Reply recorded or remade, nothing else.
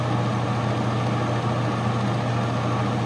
recorded